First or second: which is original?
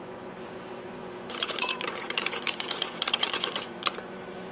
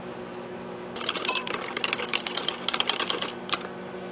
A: second